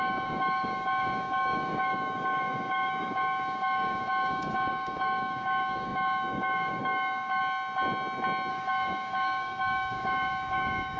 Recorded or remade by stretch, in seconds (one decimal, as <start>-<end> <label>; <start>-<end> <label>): 0.0-7.4 remade; 7.4-8.5 recorded; 8.5-11.0 remade